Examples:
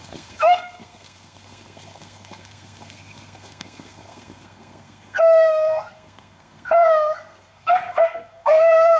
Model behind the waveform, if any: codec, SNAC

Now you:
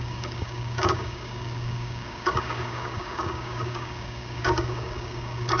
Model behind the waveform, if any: codec, DAC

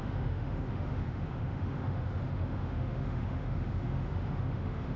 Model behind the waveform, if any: autoencoder, DAC-VAE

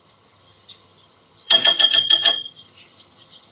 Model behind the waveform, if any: vocoder, HiFi-GAN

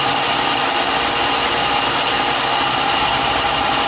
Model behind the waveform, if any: none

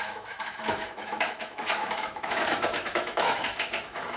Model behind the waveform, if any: autoencoder, DAC-VAE